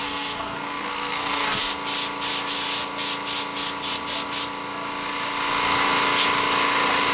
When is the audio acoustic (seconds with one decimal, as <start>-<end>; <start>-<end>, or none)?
1.6-7.1